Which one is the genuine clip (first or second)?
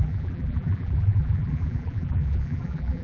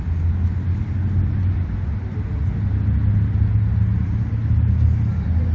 second